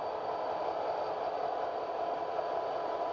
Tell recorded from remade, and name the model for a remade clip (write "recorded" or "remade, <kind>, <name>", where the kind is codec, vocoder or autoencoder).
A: recorded